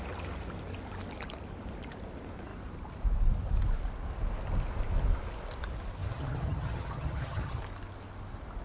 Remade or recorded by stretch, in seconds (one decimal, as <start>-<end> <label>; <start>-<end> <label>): 0.0-6.0 recorded; 6.0-7.6 remade; 7.6-8.6 recorded